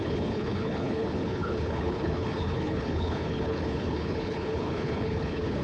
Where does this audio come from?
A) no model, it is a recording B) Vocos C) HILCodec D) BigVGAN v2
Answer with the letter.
C